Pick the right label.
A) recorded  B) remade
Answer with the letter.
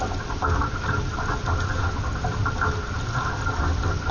A